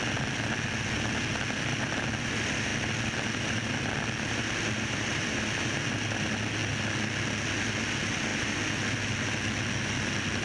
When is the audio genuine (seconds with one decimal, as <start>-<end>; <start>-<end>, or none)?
0.0-10.4